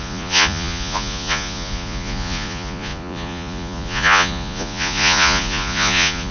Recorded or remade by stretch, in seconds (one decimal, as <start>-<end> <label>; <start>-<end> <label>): 0.0-6.3 remade